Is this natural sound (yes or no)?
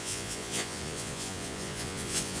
no